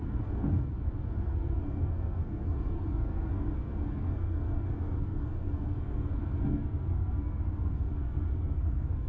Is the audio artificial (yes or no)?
yes